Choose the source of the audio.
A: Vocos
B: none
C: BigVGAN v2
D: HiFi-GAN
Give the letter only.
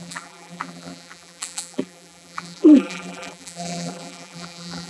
C